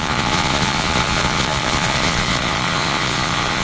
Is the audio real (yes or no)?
no